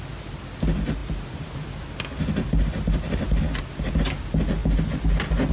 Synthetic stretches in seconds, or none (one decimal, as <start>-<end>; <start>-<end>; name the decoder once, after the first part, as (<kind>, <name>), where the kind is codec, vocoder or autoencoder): none